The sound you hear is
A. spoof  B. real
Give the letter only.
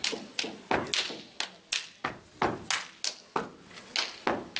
B